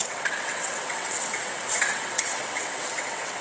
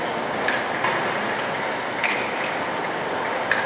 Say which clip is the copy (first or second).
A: first